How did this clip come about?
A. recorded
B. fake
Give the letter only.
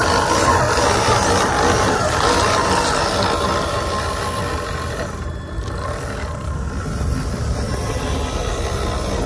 A